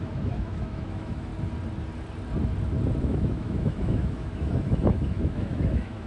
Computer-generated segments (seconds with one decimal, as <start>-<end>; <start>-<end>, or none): 0.0-1.3; 3.0-6.1